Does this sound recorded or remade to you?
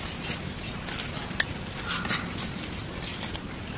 recorded